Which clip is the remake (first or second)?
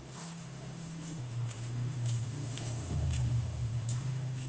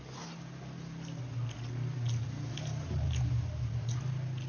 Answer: first